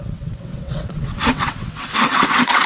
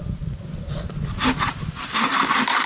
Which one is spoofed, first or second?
first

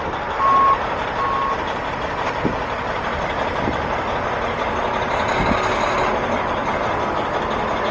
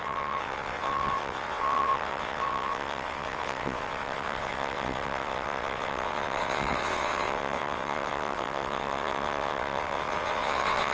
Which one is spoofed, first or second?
second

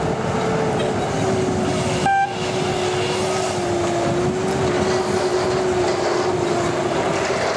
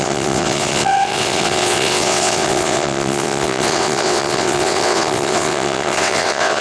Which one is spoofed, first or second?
second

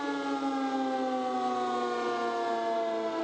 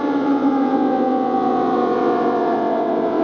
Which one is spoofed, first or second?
second